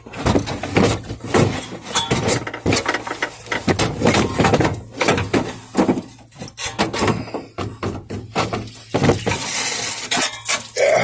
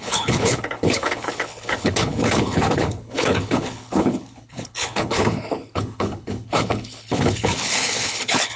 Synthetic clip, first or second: second